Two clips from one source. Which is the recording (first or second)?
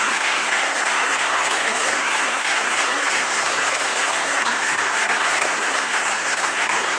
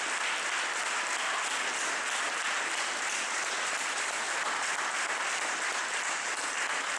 second